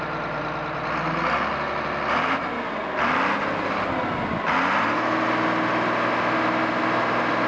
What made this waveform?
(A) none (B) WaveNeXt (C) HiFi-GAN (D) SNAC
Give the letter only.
A